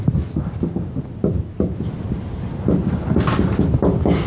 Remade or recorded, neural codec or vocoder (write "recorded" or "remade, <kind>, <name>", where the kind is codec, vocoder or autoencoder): recorded